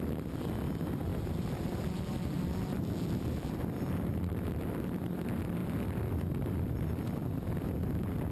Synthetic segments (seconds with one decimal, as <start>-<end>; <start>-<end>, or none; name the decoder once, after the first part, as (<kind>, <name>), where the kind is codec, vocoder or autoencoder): 1.1-3.6 (vocoder, BigVGAN v2); 5.6-6.7